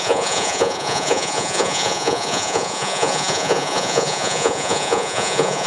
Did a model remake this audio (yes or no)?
yes